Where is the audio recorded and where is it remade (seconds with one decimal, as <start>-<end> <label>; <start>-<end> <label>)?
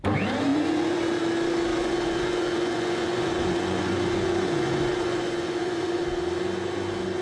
0.0-0.5 recorded; 0.5-1.2 remade; 1.2-1.7 recorded; 1.7-6.0 remade; 6.0-7.2 recorded